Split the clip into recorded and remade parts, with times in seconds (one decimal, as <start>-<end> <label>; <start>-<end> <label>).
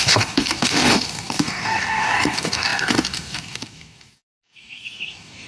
0.0-5.5 remade